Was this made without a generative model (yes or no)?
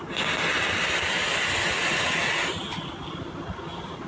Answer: yes